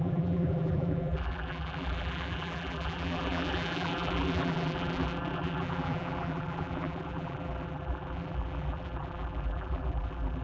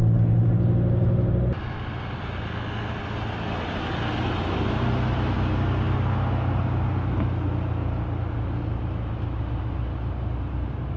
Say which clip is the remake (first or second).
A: first